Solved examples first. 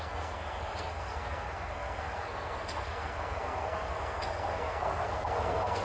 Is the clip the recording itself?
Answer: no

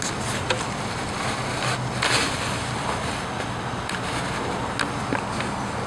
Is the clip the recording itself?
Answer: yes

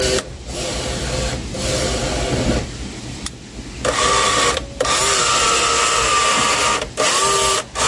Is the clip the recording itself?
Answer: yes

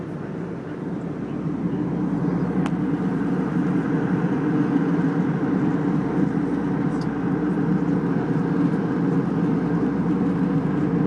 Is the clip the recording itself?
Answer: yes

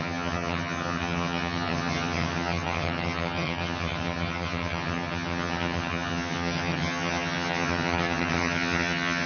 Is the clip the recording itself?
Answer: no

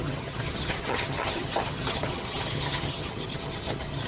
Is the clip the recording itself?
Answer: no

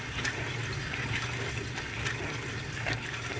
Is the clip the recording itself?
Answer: yes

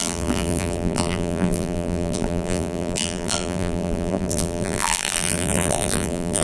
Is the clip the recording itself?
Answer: no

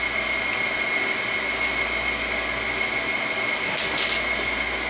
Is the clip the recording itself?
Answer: yes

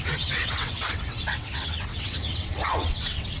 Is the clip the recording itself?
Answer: no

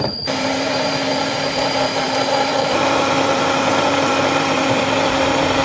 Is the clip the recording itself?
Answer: no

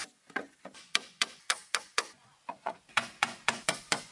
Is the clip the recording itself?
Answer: no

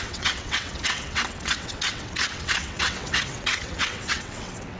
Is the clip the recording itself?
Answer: no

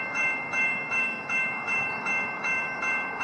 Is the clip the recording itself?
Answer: no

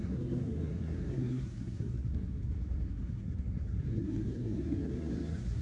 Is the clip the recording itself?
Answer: no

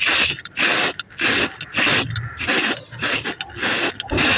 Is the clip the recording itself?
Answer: yes